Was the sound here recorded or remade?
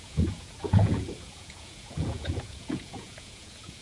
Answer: remade